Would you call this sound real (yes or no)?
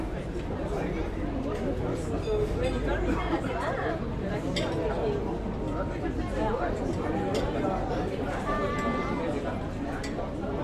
yes